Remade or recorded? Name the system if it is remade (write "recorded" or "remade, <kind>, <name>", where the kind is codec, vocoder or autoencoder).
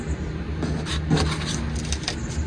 recorded